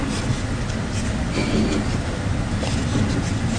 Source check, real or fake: real